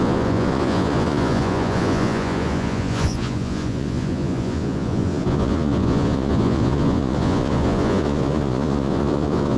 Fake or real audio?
fake